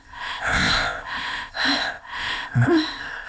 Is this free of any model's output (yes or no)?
no